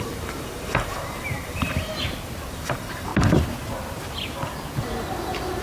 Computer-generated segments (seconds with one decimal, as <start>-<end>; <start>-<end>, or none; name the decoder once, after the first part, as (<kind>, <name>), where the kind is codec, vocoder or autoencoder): 0.0-1.9 (vocoder, BigVGAN v2); 2.5-3.1